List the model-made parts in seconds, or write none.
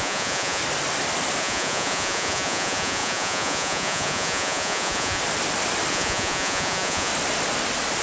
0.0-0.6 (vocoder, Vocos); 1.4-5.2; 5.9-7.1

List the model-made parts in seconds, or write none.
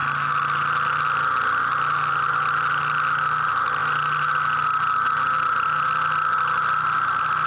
none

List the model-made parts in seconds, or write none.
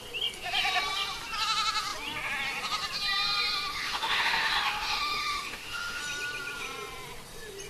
3.7-6.0 (autoencoder, DAC-VAE)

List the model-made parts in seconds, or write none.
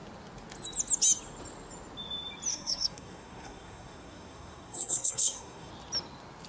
2.5-5.7 (codec, SNAC)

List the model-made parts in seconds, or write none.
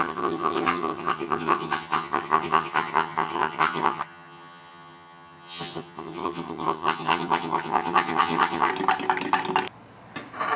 0.0-8.7 (vocoder, HiFi-GAN)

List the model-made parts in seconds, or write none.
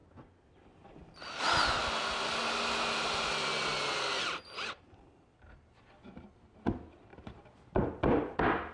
none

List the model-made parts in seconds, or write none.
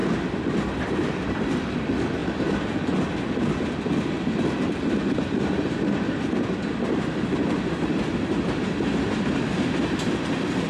0.6-2.2 (vocoder, BigVGAN v2); 5.4-10.7